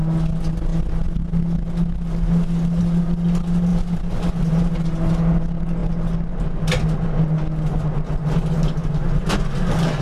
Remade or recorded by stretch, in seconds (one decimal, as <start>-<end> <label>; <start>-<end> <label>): 0.0-10.0 recorded

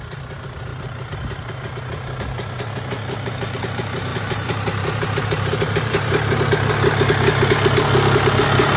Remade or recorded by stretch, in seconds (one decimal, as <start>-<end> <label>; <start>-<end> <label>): 0.0-0.7 recorded; 0.7-1.7 remade; 1.7-4.1 recorded; 4.1-6.7 remade; 6.7-8.8 recorded

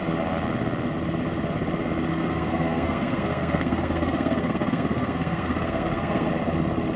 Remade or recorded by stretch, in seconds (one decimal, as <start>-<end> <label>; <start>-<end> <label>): 0.0-2.1 recorded; 2.1-6.3 remade; 6.3-7.0 recorded

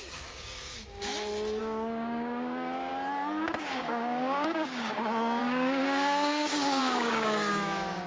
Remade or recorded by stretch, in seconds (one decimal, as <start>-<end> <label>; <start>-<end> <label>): 0.0-1.1 remade; 1.1-1.6 recorded; 1.6-2.9 remade; 2.9-3.6 recorded; 3.6-8.1 remade